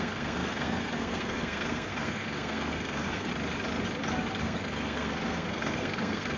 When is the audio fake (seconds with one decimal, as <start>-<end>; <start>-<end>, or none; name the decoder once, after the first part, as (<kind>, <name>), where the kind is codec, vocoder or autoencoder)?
0.0-3.3 (codec, SNAC); 4.4-6.4